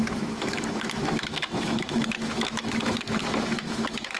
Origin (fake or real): fake